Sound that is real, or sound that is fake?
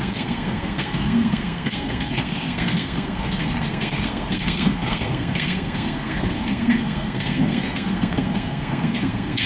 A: fake